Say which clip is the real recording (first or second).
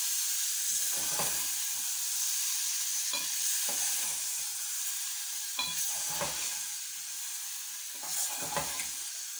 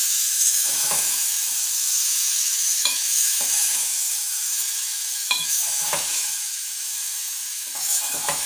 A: first